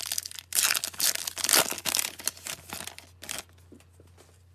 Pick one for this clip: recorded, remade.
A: recorded